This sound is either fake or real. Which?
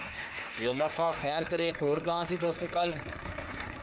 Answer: fake